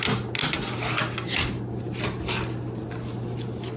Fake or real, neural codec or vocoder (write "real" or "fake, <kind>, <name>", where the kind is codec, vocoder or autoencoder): real